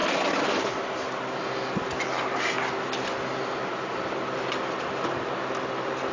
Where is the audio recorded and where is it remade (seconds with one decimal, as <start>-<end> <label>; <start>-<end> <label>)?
0.0-6.1 recorded